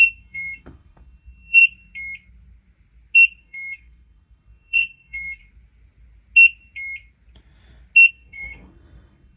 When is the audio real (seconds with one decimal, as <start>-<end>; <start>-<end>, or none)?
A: 1.6-3.4; 5.4-8.1